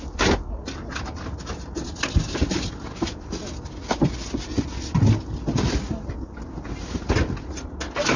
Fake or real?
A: real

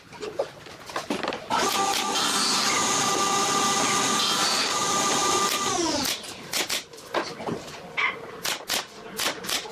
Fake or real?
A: real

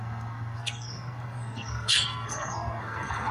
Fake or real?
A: fake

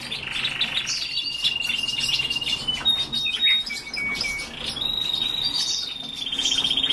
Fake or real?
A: real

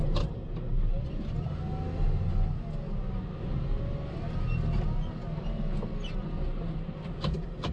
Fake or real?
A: real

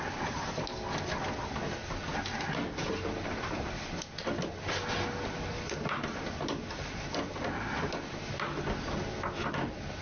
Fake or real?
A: real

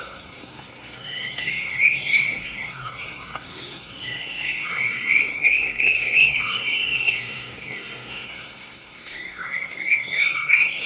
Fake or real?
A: fake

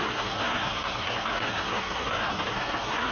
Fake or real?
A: fake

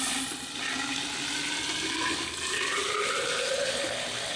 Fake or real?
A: real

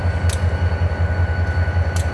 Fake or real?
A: real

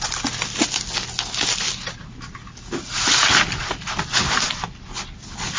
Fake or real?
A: real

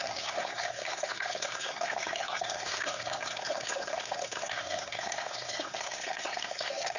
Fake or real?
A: fake